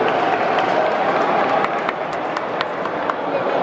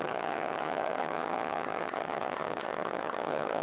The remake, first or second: second